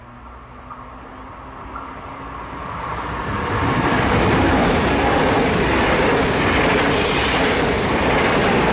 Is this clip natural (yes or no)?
yes